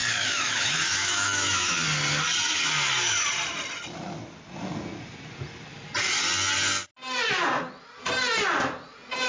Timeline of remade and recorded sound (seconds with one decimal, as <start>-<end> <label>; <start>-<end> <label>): 0.0-1.7 remade; 1.7-9.3 recorded